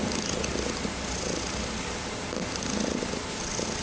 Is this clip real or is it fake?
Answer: real